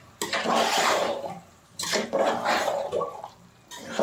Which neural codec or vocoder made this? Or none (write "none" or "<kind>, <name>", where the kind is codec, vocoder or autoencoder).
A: vocoder, BigVGAN v2